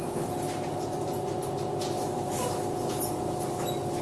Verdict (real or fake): real